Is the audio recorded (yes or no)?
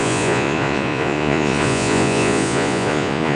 no